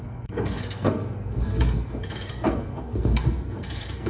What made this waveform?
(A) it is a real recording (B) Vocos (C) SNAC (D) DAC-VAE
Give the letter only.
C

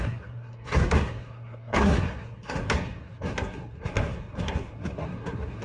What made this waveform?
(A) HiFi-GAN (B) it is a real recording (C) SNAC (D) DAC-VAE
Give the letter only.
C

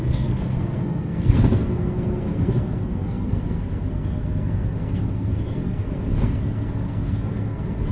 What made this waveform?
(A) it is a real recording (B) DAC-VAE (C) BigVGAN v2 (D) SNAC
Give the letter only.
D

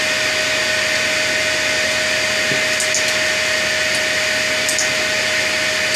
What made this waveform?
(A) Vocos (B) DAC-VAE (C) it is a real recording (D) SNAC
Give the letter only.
C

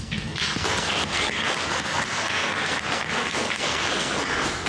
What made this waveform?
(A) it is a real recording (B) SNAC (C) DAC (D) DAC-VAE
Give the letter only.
B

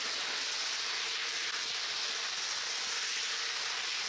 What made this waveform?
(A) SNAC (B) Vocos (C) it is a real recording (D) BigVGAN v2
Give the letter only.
C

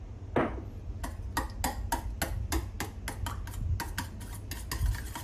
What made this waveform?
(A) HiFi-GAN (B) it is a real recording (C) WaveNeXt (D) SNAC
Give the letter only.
B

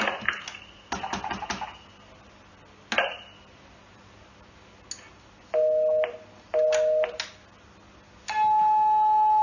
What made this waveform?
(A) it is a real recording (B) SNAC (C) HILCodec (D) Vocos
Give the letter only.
A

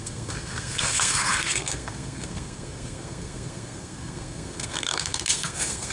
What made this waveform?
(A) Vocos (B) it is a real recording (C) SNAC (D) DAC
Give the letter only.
C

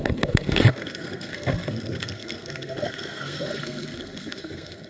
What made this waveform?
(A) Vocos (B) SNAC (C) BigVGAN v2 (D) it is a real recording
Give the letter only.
B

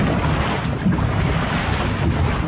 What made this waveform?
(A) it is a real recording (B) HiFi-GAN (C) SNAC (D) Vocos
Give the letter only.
A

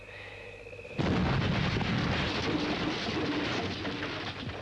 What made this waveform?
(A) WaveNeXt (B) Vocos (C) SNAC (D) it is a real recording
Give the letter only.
D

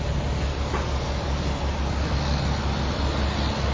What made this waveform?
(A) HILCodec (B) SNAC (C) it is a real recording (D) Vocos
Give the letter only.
C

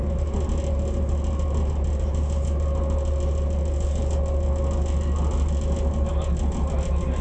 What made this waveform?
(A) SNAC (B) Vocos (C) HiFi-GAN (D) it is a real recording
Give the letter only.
D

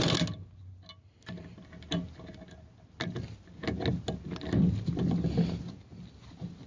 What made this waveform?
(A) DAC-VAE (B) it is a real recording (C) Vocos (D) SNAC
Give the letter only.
B